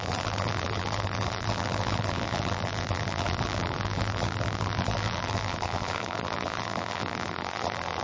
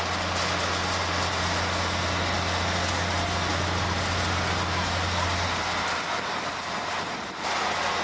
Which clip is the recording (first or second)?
second